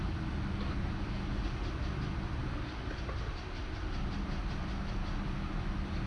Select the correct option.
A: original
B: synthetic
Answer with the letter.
A